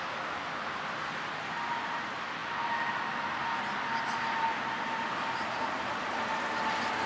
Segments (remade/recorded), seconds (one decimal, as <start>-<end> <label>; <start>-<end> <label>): 0.0-7.1 recorded